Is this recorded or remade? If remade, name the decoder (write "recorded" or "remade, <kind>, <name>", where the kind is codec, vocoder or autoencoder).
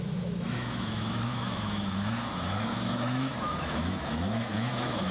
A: remade, autoencoder, DAC-VAE